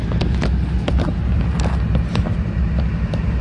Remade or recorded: recorded